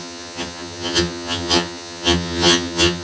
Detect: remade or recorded remade